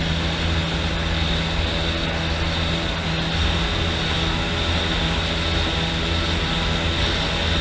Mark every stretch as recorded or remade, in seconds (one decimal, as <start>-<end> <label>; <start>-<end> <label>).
0.0-7.6 recorded